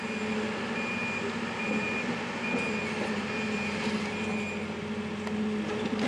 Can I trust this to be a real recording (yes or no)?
yes